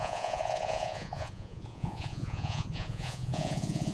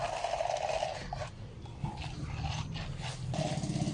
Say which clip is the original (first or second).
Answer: second